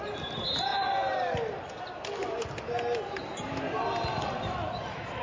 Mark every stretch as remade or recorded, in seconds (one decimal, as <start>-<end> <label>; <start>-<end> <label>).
0.0-5.2 recorded